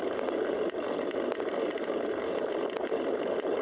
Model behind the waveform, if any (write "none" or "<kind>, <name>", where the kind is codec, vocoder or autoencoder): vocoder, BigVGAN v2